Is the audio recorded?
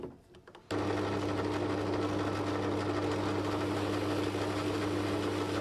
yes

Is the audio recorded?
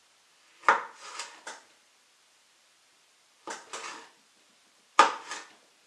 no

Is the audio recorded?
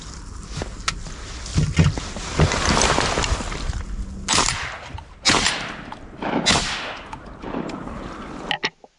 yes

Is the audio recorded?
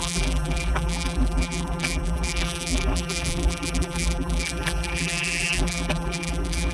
no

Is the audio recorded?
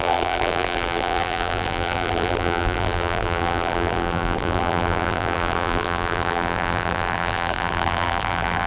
no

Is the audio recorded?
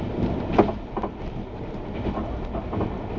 no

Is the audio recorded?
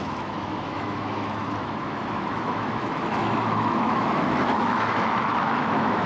no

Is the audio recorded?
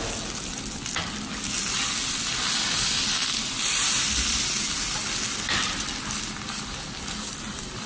yes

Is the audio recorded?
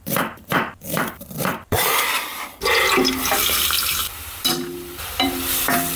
no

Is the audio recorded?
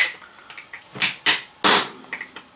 yes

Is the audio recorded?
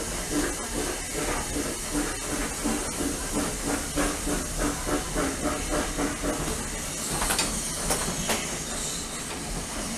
yes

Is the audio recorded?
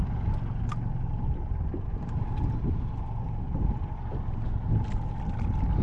yes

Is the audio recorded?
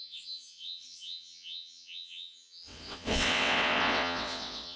no